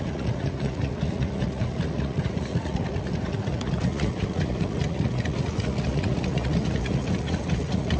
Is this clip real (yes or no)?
no